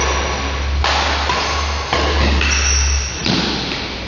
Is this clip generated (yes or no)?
no